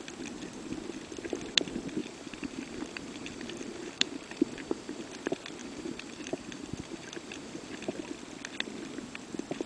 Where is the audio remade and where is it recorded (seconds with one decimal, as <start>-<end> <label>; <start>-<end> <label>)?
0.0-2.0 recorded; 2.0-5.1 remade; 5.1-5.6 recorded; 5.6-7.8 remade; 7.8-9.7 recorded